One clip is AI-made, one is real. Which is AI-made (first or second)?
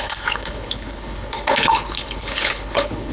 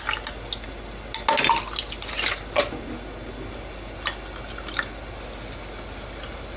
first